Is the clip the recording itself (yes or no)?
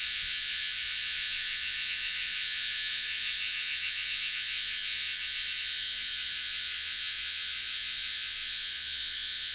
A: no